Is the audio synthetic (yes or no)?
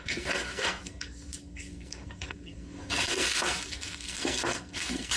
yes